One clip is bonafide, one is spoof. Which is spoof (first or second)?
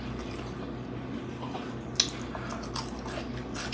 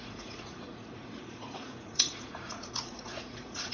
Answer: second